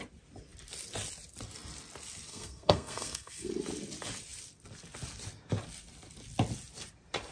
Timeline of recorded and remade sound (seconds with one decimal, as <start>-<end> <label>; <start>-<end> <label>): 0.0-2.3 recorded; 2.3-3.5 remade; 3.5-7.3 recorded

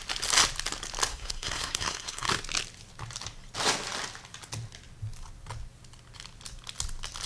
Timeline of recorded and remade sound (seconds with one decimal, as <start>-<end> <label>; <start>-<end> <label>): 0.0-1.1 recorded; 1.1-2.3 remade; 2.3-7.3 recorded

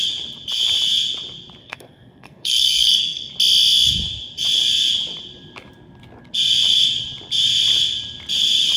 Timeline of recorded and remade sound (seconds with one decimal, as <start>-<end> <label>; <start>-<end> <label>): 0.0-1.6 recorded; 1.6-3.3 remade; 3.3-8.8 recorded

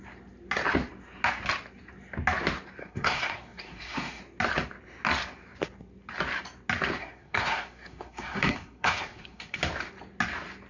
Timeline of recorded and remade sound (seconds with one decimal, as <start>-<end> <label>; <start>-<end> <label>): 0.0-2.8 recorded; 2.8-4.2 remade; 4.2-7.0 recorded; 7.0-9.6 remade; 9.6-10.7 recorded

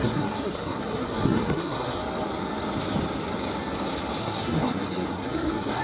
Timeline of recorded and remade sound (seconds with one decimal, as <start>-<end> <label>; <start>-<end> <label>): 0.0-2.0 remade; 2.0-4.2 recorded; 4.2-5.8 remade

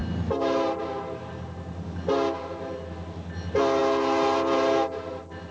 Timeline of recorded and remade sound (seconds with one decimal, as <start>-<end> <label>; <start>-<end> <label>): 0.0-5.5 recorded

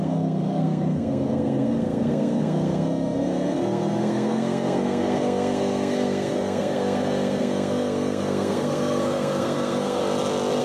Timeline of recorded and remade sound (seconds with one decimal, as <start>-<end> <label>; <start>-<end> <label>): 0.0-10.0 remade; 10.0-10.6 recorded

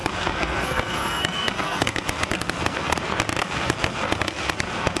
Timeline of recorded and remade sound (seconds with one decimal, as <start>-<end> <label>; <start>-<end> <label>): 0.0-3.0 remade; 3.0-3.4 recorded; 3.4-5.0 remade